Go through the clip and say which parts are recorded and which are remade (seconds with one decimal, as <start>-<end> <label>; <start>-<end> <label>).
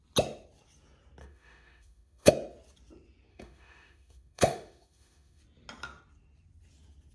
0.0-1.2 recorded; 1.2-2.3 remade; 2.3-3.3 recorded; 3.3-5.4 remade; 5.4-7.1 recorded